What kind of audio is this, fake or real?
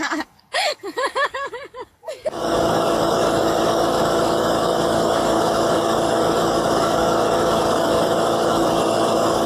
fake